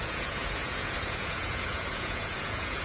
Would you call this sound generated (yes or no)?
yes